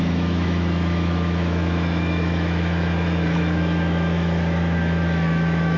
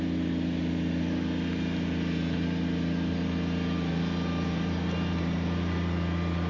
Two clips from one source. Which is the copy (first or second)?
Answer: first